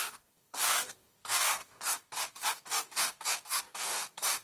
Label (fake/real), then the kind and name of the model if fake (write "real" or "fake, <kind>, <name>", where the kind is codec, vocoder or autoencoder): fake, codec, DAC